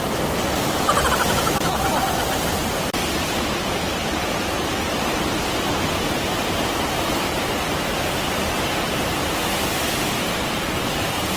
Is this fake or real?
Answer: fake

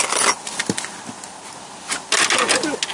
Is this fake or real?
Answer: real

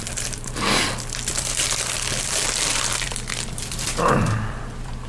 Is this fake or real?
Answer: fake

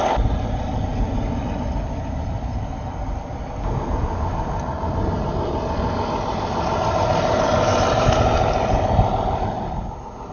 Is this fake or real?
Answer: real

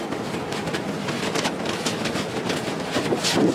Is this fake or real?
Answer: real